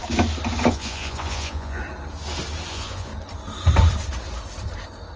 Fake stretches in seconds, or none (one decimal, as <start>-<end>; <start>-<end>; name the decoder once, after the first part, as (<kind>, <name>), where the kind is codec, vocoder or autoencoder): 0.7-1.8 (vocoder, Vocos); 2.7-3.1